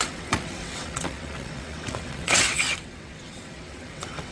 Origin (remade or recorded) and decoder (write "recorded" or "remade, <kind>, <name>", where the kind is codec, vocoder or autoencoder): remade, vocoder, WaveNeXt